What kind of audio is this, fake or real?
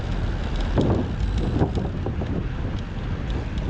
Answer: real